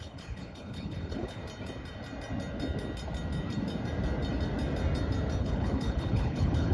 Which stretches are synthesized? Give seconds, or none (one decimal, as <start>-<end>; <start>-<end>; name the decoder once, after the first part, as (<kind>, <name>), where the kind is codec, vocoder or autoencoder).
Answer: 0.0-1.4 (codec, HILCodec); 5.4-6.7